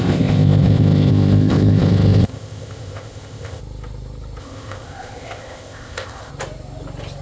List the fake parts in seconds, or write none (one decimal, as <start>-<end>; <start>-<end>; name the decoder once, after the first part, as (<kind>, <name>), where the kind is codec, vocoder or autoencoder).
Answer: 0.0-3.6 (codec, ZipCodec); 4.4-6.3